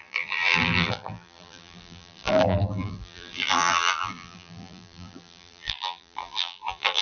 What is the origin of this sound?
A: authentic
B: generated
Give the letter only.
B